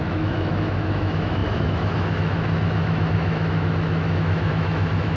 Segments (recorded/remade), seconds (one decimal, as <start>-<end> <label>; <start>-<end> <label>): 0.0-5.2 remade